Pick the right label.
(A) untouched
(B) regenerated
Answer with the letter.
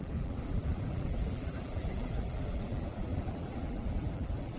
B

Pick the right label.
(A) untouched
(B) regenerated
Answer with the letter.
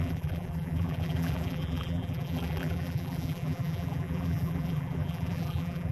B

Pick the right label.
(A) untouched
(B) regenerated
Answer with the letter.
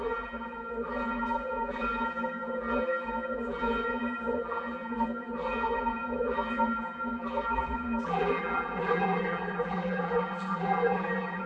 B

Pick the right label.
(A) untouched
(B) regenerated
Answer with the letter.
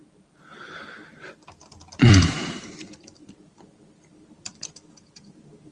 B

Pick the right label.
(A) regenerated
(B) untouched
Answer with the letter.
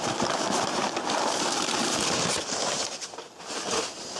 A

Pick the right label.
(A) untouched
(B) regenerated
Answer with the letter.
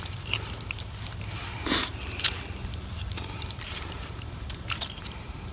B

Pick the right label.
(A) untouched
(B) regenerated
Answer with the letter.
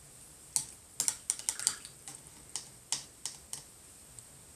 A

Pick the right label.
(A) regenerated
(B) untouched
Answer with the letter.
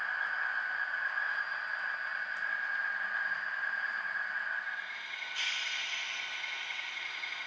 B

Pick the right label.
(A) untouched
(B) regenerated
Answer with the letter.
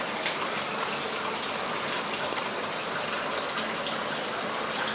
A